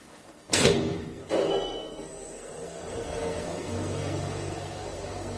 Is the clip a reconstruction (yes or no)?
yes